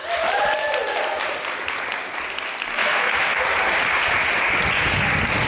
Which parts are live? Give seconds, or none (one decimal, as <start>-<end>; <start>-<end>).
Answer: 0.0-2.8; 3.4-5.5